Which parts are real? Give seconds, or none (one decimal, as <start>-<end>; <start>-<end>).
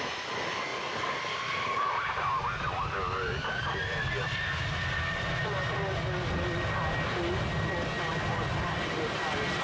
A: 0.0-9.6